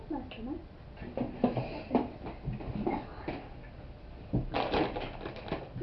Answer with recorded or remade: recorded